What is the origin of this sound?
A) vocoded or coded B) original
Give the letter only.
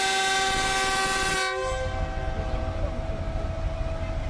B